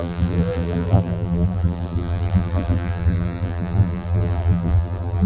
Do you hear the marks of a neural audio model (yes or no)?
yes